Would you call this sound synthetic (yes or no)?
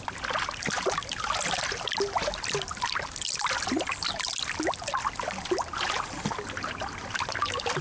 no